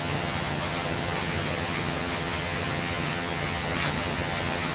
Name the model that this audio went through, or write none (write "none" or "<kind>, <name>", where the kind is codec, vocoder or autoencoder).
vocoder, HiFi-GAN